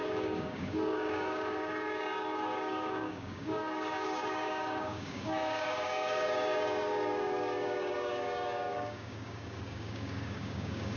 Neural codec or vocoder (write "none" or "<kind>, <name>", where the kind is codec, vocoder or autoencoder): codec, DAC